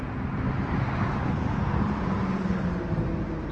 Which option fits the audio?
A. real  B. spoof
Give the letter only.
A